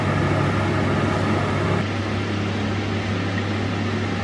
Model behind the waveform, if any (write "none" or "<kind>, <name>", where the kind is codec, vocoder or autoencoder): none